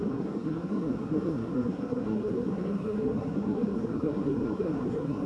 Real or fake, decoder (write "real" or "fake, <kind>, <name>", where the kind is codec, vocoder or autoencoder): fake, codec, SNAC